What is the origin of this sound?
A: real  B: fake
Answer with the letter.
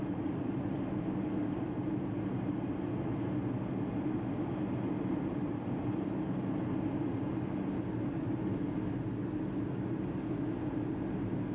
A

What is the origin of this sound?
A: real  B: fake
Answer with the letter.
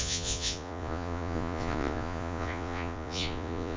B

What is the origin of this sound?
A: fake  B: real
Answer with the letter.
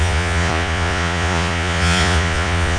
A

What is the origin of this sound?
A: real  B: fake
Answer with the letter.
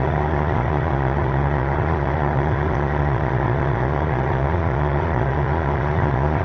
B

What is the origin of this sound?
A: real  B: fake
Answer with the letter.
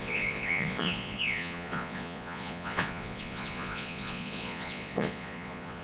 B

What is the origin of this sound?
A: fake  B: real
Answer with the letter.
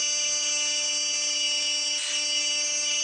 B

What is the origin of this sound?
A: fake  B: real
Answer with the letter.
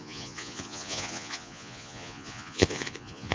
A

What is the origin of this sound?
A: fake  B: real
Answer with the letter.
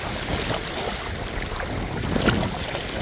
B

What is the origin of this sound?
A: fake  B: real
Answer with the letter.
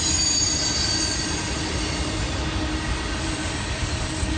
B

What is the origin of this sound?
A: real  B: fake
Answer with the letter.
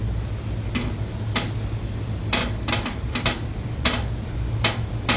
A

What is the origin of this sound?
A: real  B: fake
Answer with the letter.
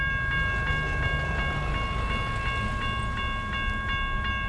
A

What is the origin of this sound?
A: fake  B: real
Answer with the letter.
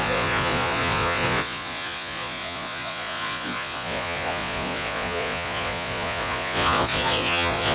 A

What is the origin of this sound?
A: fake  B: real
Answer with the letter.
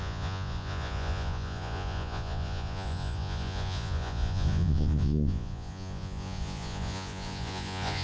A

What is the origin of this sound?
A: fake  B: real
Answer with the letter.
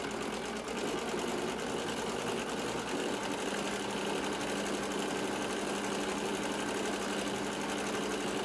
B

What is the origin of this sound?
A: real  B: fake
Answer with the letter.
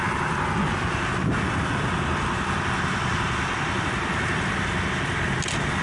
A